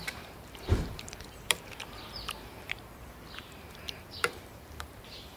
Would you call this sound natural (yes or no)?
no